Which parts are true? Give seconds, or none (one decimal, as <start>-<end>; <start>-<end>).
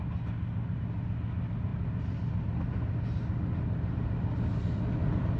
0.0-5.4